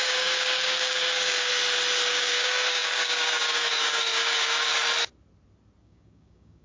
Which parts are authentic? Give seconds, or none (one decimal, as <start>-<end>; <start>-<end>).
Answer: 1.5-2.1; 4.7-5.8